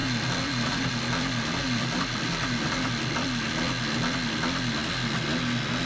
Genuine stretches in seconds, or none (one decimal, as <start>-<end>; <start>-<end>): 2.9-5.9